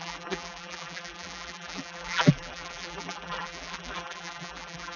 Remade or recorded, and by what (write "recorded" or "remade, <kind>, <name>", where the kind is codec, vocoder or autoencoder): remade, vocoder, BigVGAN v2